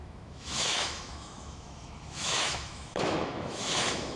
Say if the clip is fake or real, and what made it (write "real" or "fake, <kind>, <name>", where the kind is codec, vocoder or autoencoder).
fake, autoencoder, DAC-VAE